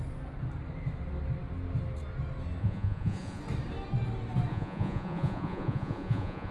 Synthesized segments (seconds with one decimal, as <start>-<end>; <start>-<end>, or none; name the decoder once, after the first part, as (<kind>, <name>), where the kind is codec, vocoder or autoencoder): 2.6-3.4 (vocoder, Vocos); 4.5-6.5